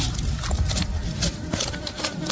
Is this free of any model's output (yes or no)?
no